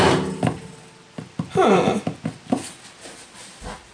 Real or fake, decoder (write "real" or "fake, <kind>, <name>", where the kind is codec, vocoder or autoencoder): real